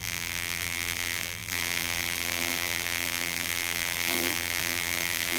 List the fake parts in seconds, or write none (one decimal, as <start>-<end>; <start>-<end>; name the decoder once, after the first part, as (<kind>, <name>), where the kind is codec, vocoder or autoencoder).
0.0-5.4 (vocoder, BigVGAN v2)